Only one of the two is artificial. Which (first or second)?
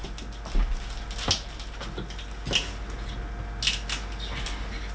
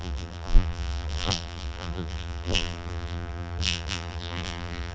second